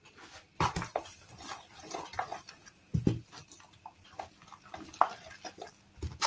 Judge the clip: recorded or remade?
recorded